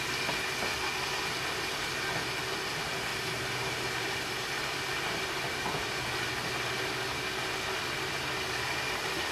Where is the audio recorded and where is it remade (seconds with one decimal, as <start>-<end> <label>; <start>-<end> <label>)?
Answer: 0.0-3.1 recorded; 3.1-6.0 remade; 6.0-9.3 recorded